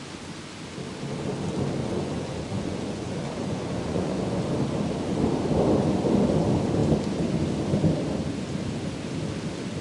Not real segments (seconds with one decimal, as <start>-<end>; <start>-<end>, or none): 1.8-4.5